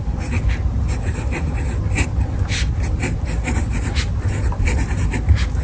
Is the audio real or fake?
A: real